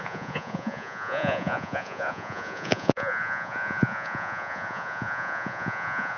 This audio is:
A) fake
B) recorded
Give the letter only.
A